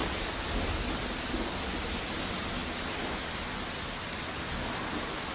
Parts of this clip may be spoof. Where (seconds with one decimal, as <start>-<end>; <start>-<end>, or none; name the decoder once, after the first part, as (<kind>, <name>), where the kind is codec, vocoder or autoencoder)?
none